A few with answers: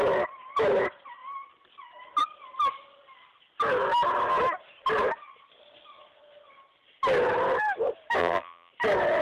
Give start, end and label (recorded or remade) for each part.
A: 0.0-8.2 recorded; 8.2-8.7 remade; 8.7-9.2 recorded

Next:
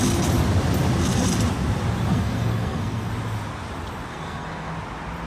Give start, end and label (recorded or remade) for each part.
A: 0.0-2.1 recorded; 2.1-3.1 remade; 3.1-4.1 recorded; 4.1-4.7 remade; 4.7-5.3 recorded

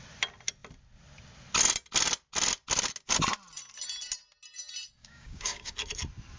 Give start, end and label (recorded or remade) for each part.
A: 0.0-5.0 recorded; 5.0-5.7 remade; 5.7-6.4 recorded

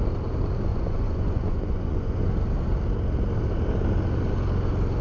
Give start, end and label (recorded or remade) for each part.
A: 0.0-0.7 recorded; 0.7-2.3 remade; 2.3-5.0 recorded